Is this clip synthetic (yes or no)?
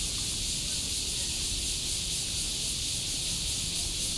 no